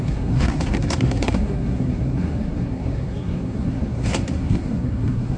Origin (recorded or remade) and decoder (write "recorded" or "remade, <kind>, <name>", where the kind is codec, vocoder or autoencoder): remade, codec, SNAC